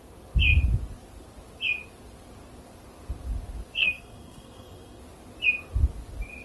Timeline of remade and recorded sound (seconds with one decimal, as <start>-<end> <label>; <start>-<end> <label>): 0.0-3.8 recorded; 3.8-5.0 remade; 5.0-6.4 recorded